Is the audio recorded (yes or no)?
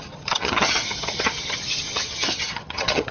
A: no